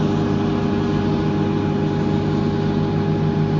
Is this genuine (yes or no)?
yes